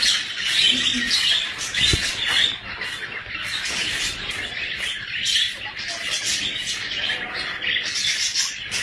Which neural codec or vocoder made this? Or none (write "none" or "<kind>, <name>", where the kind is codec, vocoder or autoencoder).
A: none